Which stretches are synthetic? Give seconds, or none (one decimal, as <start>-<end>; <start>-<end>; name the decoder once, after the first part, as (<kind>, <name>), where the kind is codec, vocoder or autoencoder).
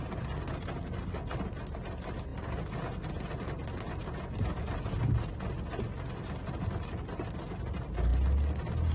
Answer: none